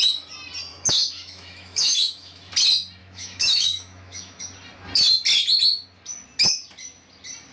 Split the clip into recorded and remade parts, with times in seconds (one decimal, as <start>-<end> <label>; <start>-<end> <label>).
0.0-0.7 recorded; 0.7-2.5 remade; 2.5-3.0 recorded; 3.0-4.4 remade; 4.4-7.5 recorded

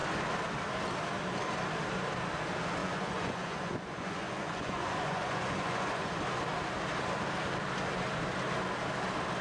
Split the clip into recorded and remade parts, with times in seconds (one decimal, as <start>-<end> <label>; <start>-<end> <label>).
0.0-2.8 recorded; 2.8-6.1 remade; 6.1-9.4 recorded